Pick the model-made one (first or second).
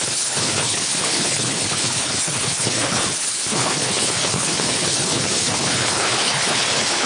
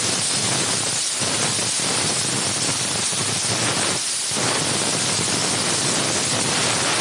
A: first